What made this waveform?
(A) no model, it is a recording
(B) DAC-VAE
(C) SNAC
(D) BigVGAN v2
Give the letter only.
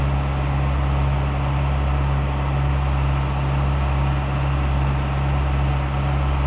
A